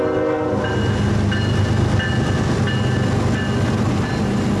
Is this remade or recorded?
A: recorded